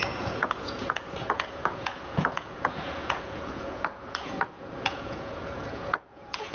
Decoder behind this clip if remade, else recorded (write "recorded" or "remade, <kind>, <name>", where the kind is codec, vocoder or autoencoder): remade, vocoder, Vocos